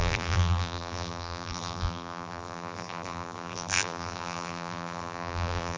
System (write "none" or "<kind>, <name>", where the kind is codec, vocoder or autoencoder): vocoder, BigVGAN v2